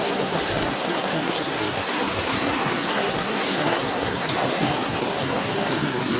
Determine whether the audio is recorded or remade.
remade